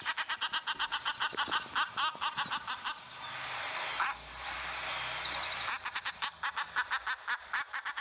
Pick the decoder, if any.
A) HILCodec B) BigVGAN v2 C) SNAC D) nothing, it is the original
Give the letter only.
D